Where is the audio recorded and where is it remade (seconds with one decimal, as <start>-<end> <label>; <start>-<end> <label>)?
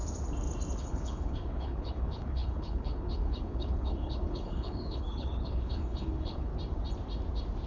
0.0-0.8 recorded; 0.8-6.5 remade; 6.5-7.7 recorded